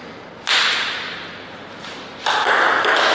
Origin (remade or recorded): recorded